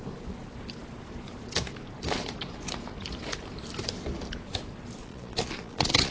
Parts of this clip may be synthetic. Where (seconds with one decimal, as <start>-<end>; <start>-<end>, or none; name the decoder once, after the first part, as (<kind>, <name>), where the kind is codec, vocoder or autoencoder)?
5.0-6.1 (vocoder, Vocos)